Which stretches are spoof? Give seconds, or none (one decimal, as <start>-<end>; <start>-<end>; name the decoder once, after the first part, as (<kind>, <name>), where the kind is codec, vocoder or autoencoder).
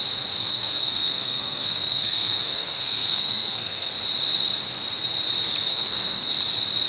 0.4-3.9 (codec, SNAC); 5.7-6.3